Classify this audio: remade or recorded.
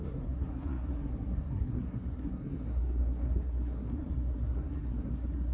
remade